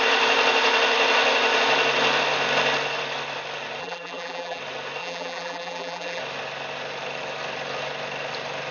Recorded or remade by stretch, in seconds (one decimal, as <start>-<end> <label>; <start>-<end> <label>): 0.0-3.8 recorded; 3.8-4.6 remade; 4.6-5.0 recorded; 5.0-6.2 remade; 6.2-8.7 recorded